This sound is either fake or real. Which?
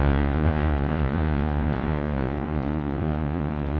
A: fake